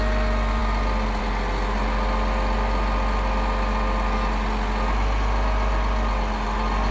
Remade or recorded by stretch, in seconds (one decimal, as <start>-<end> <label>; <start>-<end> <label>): 0.0-6.9 recorded